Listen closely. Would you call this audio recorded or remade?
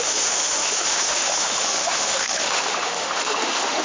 remade